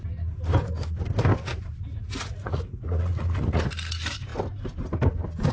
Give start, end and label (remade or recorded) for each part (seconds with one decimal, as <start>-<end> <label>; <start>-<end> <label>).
0.0-1.9 recorded; 1.9-3.6 remade; 3.6-5.5 recorded